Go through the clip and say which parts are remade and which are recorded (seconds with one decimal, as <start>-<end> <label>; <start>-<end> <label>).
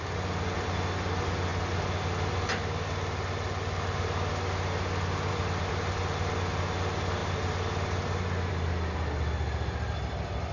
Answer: 0.0-10.5 recorded